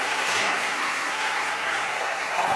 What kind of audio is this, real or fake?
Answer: fake